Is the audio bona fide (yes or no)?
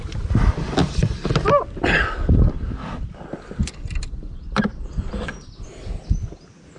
yes